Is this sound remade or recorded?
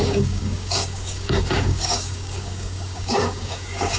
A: remade